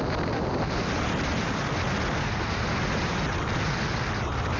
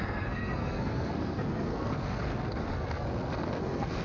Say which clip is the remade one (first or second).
second